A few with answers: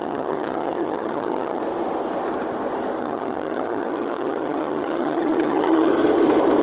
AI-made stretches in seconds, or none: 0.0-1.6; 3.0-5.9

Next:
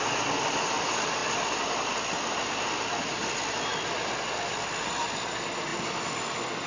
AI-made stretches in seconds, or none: none

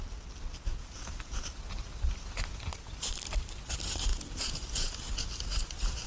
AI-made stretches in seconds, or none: 0.7-1.4; 4.1-4.9

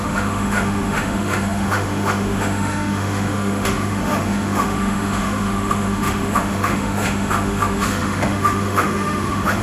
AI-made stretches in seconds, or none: 0.0-9.6

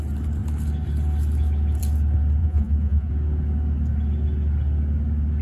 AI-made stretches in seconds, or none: 2.4-3.1

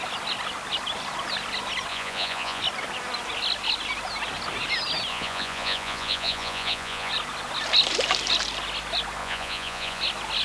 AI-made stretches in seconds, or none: 1.9-2.6; 5.1-7.1; 9.2-10.0